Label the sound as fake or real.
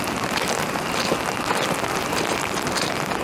real